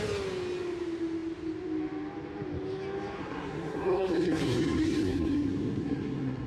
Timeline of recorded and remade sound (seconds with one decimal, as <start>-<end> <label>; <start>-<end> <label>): 0.0-3.2 recorded; 3.2-6.5 remade